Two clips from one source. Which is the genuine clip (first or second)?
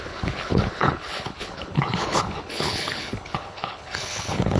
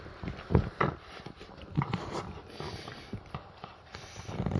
second